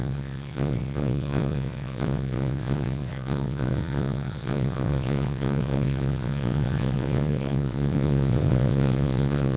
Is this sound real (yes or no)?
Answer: no